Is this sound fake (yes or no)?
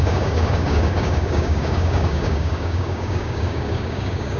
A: yes